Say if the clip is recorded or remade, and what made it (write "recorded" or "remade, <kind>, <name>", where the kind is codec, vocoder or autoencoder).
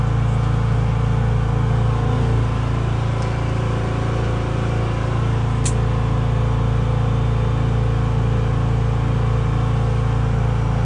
recorded